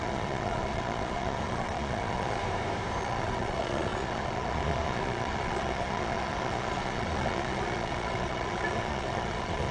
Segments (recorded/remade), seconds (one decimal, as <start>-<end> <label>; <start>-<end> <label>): 0.0-2.4 remade; 2.4-3.0 recorded; 3.0-9.7 remade